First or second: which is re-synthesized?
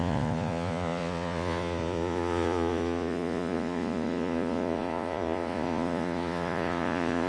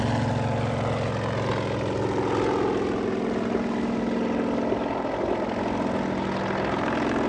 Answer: first